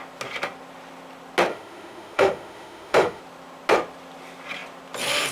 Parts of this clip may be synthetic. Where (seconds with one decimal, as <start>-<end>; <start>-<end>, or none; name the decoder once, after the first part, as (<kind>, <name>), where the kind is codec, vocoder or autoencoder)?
1.5-3.2 (autoencoder, DAC-VAE)